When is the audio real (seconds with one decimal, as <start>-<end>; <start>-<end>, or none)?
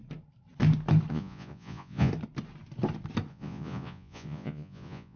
0.0-1.1; 2.1-3.3